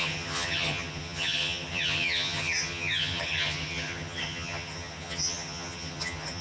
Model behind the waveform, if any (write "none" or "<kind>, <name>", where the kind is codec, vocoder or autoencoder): vocoder, HiFi-GAN